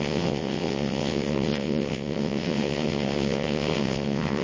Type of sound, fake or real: fake